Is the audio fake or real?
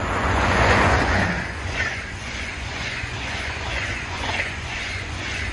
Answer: fake